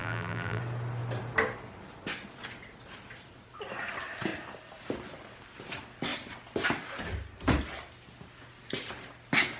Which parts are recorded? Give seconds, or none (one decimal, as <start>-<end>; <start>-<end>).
0.6-9.6